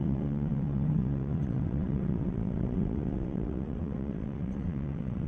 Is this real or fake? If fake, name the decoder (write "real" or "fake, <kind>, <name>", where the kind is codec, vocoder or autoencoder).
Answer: fake, vocoder, WaveNeXt